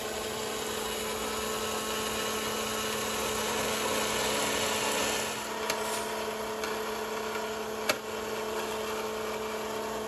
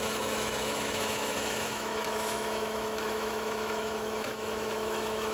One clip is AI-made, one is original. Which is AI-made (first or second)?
second